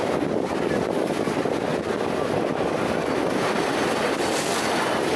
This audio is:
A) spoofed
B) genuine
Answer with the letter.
B